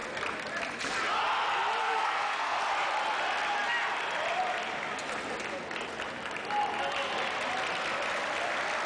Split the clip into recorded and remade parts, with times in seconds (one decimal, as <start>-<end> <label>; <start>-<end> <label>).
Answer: 0.0-1.8 recorded; 1.8-2.6 remade; 2.6-8.9 recorded